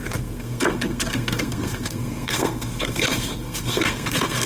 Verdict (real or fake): fake